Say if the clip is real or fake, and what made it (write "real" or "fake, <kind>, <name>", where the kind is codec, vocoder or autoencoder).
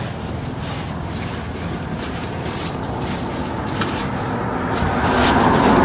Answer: real